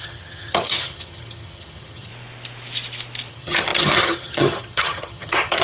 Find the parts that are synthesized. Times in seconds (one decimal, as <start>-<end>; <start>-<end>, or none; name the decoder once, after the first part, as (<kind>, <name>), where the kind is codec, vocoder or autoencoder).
0.0-2.1 (vocoder, HiFi-GAN); 3.3-5.6